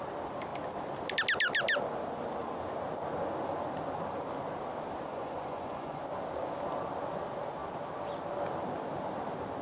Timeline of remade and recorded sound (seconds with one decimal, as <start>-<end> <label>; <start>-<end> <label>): 0.0-5.1 recorded; 5.1-6.0 remade; 6.0-9.6 recorded